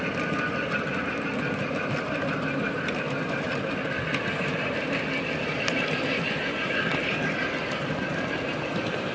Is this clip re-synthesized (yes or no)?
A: no